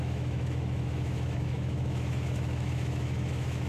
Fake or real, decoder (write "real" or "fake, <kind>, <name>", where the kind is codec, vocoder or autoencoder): fake, autoencoder, DAC-VAE